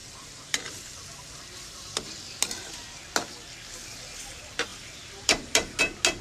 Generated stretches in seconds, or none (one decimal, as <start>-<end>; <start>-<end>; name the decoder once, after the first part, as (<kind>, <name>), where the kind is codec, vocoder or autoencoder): 0.0-2.1 (vocoder, BigVGAN v2); 4.7-5.8